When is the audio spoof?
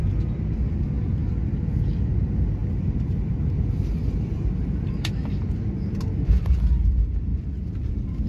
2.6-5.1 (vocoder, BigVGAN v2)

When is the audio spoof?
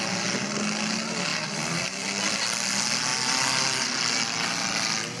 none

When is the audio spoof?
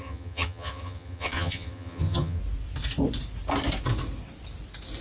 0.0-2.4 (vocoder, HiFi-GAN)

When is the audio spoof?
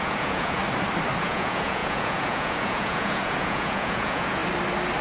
0.0-0.6 (vocoder, Vocos); 1.2-4.4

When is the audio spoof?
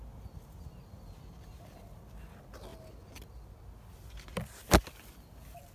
none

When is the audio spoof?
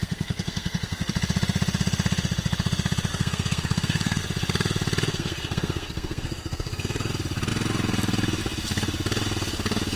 0.0-1.1 (codec, SNAC); 3.1-4.2; 5.1-7.1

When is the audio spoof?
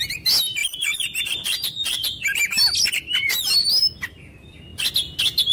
none